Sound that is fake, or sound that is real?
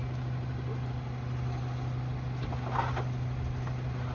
real